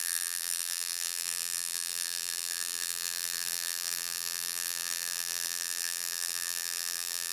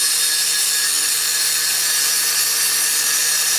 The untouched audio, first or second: second